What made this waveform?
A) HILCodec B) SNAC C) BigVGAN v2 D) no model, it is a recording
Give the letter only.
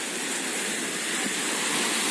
D